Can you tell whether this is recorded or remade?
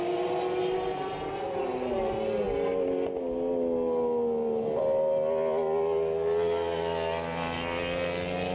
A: recorded